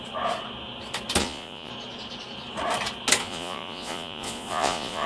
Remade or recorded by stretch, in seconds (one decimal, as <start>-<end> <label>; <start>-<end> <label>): 0.0-1.2 recorded; 1.2-1.7 remade; 1.7-3.2 recorded; 3.2-5.1 remade

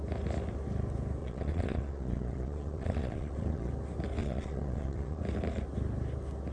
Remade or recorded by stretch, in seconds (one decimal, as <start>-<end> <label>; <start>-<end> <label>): 0.0-1.2 recorded; 1.2-3.7 remade; 3.7-4.2 recorded; 4.2-5.2 remade; 5.2-6.5 recorded